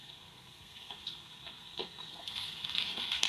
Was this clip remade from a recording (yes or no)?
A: yes